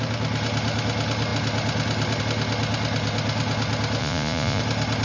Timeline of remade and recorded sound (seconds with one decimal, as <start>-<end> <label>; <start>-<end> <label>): 0.0-4.0 recorded; 4.0-4.6 remade; 4.6-5.0 recorded